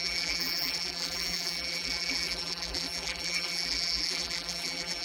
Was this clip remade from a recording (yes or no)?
yes